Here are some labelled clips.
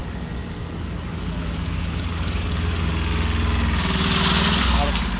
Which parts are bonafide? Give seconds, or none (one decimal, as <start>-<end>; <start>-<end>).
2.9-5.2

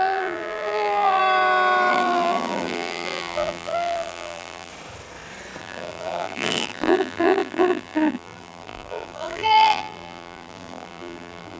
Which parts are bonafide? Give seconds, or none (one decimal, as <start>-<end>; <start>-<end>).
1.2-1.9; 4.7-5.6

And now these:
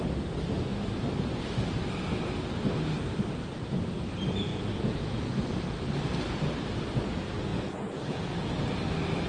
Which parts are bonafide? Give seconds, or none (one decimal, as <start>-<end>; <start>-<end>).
0.0-4.5; 5.4-7.5; 8.6-9.3

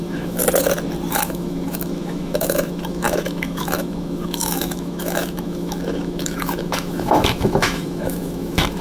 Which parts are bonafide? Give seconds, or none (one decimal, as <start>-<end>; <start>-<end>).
0.4-1.1

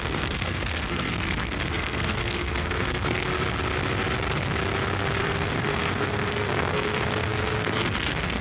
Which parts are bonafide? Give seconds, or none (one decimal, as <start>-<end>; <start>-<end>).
3.3-5.2